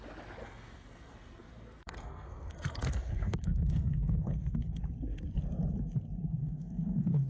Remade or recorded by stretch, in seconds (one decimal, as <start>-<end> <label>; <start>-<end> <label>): 0.0-0.4 recorded; 0.4-4.8 remade; 4.8-6.4 recorded; 6.4-7.3 remade